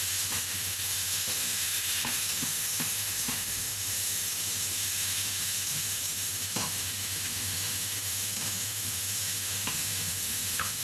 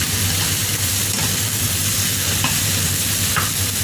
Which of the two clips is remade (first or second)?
first